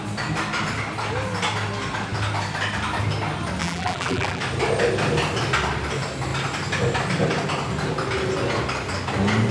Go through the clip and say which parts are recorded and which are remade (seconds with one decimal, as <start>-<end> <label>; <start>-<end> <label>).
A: 0.0-3.6 recorded; 3.6-4.4 remade; 4.4-9.5 recorded

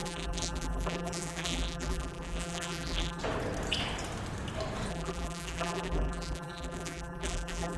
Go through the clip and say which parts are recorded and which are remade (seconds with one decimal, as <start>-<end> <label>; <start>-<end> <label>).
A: 0.0-3.2 remade; 3.2-4.9 recorded; 4.9-7.8 remade

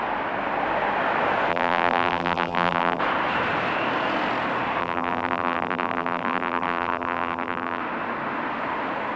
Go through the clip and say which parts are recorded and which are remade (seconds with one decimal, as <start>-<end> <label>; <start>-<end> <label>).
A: 0.0-1.5 recorded; 1.5-3.0 remade; 3.0-4.8 recorded; 4.8-7.8 remade; 7.8-9.2 recorded

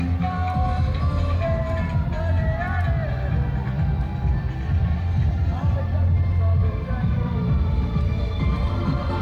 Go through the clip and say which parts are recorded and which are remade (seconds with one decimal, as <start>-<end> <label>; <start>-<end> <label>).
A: 0.0-6.6 recorded; 6.6-9.2 remade